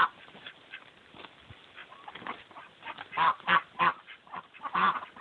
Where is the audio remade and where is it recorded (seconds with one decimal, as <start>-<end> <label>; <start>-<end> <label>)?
0.0-5.2 recorded